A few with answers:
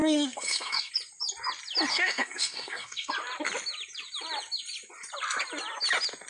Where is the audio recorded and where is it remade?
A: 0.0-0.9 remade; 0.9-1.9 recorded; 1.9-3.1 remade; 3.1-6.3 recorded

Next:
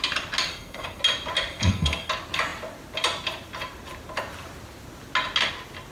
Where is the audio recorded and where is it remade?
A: 0.0-0.5 recorded; 0.5-1.0 remade; 1.0-1.5 recorded; 1.5-2.1 remade; 2.1-5.9 recorded

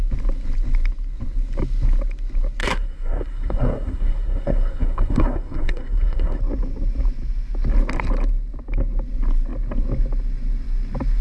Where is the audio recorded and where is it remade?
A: 0.0-2.6 recorded; 2.6-6.4 remade; 6.4-11.2 recorded

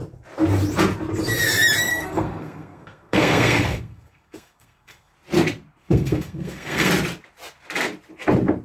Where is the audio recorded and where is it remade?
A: 0.0-1.9 recorded; 1.9-5.1 remade; 5.1-5.8 recorded; 5.8-6.9 remade; 6.9-8.6 recorded